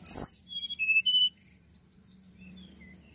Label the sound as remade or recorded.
recorded